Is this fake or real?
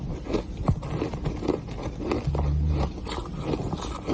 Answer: real